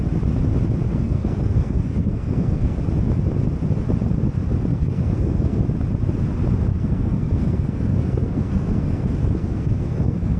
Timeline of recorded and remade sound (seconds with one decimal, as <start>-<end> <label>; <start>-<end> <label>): 0.0-0.9 recorded; 0.9-2.8 remade; 2.8-4.7 recorded; 4.7-5.6 remade; 5.6-6.7 recorded; 6.7-10.4 remade